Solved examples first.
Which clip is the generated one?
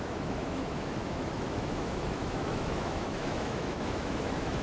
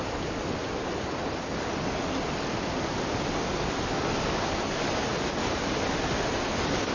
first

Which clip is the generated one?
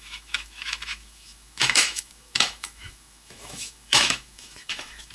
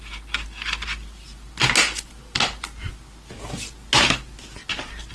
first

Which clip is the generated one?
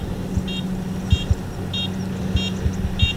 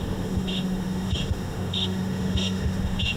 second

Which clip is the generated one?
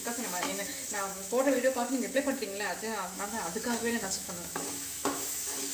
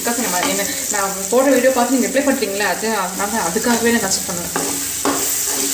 first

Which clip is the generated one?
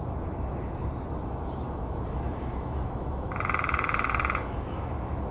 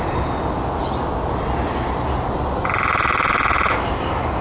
first